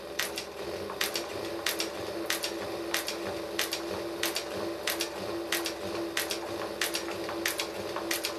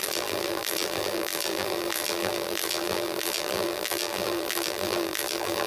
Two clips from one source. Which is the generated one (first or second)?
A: second